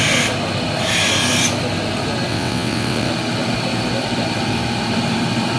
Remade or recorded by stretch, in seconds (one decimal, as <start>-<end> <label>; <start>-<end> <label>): 0.0-2.3 recorded; 2.3-3.1 remade; 3.1-5.6 recorded